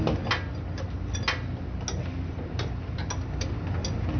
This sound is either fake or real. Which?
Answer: real